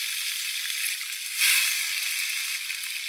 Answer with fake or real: real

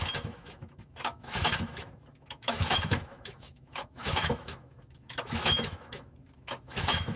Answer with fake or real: fake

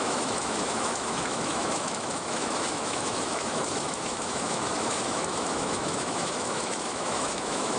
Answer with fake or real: fake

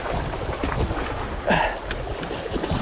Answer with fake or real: real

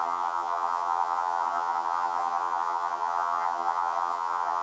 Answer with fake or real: fake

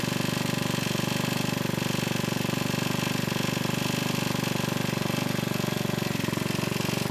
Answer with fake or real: real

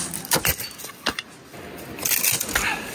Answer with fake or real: real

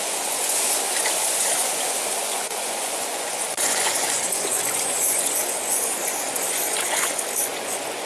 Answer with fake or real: fake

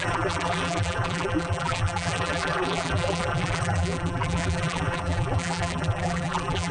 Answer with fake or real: fake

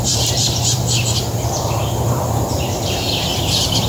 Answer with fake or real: fake